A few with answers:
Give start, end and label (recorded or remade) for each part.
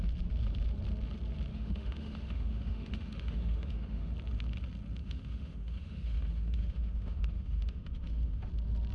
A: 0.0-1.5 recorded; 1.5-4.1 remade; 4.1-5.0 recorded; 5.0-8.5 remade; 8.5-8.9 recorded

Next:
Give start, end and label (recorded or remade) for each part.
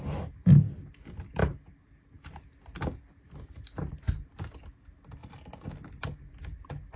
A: 0.0-7.0 recorded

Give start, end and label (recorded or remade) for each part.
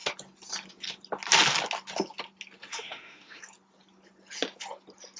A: 0.0-2.7 recorded; 2.7-3.4 remade; 3.4-5.2 recorded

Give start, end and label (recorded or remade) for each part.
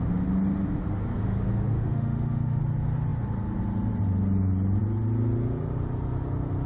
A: 0.0-1.7 recorded; 1.7-2.6 remade; 2.6-6.7 recorded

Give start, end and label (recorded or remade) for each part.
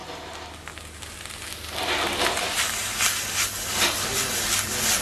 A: 0.0-5.0 recorded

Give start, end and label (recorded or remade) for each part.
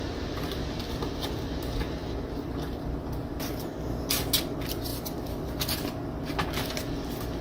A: 0.0-7.4 recorded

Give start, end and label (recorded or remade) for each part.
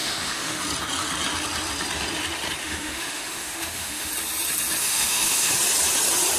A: 0.0-0.6 remade; 0.6-2.6 recorded; 2.6-4.1 remade; 4.1-4.8 recorded; 4.8-5.5 remade; 5.5-6.4 recorded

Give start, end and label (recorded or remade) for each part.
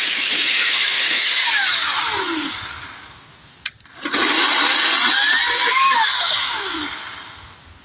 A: 0.0-1.5 remade; 1.5-5.7 recorded; 5.7-6.8 remade; 6.8-7.8 recorded